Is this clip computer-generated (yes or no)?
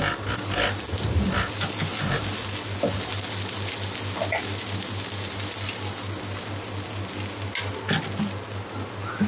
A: no